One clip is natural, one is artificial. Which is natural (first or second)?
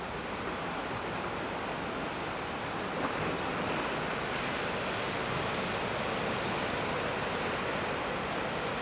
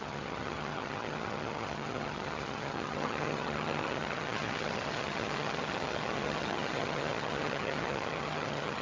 first